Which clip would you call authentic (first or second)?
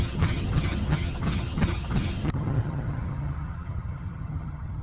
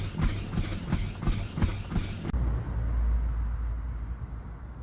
second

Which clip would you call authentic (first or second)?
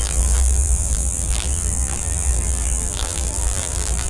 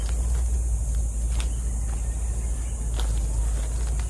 second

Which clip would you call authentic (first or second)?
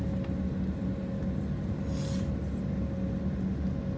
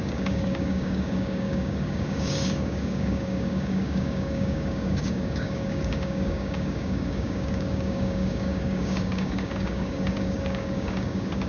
first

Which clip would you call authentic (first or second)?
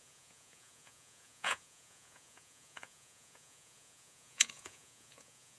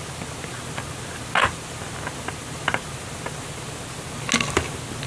second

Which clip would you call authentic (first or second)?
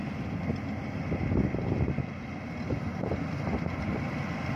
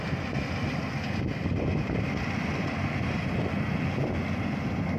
second